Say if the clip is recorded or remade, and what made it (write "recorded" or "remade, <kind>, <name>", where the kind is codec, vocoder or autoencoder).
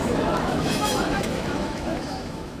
remade, autoencoder, DAC-VAE